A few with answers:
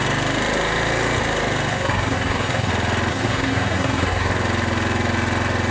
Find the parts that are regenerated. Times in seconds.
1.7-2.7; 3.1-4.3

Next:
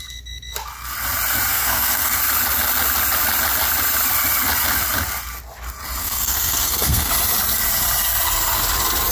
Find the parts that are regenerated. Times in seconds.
1.5-2.2; 6.0-7.1

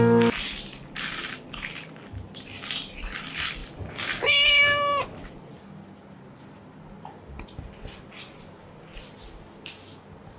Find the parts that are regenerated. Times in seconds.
none

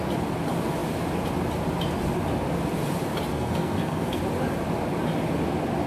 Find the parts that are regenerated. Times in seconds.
3.3-4.2

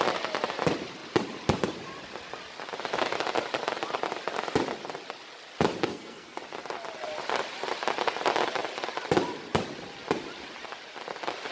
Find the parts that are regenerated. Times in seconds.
5.9-6.4

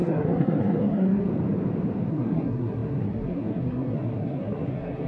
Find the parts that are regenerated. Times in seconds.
0.0-1.3; 2.1-5.1